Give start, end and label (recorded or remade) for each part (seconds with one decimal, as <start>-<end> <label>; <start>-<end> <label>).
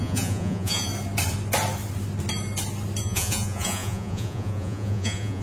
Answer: 0.0-0.9 remade; 0.9-3.0 recorded; 3.0-5.4 remade